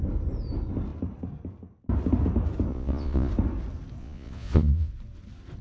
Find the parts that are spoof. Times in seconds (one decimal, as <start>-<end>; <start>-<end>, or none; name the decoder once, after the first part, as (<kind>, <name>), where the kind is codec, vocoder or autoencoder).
2.7-3.3 (vocoder, Vocos); 4.0-4.9